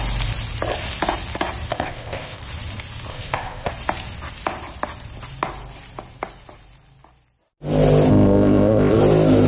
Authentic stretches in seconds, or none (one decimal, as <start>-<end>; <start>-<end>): 0.0-1.7; 2.4-3.1; 3.7-8.1; 9.0-9.5